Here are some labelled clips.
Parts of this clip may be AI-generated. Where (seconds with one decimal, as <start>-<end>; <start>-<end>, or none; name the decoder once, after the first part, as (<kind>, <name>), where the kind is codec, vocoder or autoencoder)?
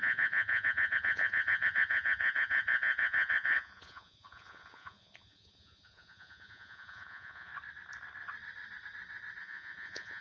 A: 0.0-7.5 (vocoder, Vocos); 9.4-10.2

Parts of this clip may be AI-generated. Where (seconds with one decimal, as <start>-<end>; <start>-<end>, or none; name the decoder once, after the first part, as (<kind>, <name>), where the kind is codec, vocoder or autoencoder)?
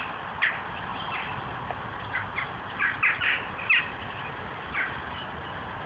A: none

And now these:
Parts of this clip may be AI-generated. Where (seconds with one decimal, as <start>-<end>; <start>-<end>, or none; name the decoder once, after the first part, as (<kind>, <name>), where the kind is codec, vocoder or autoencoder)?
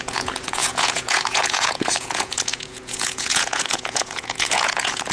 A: 0.0-5.1 (vocoder, Vocos)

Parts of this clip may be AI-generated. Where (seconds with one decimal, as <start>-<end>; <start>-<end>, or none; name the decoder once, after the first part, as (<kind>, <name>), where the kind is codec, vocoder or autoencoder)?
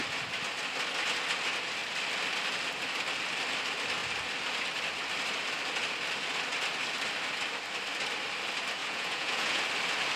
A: 8.8-9.6 (vocoder, Vocos)